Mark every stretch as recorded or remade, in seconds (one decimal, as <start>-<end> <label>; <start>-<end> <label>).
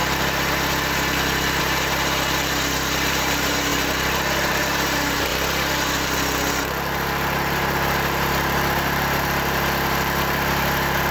0.0-5.3 remade; 5.3-6.5 recorded; 6.5-11.1 remade